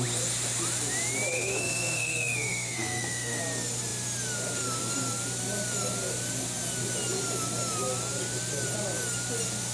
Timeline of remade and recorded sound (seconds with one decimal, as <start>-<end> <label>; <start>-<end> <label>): 0.0-1.3 recorded; 1.3-3.4 remade; 3.4-9.7 recorded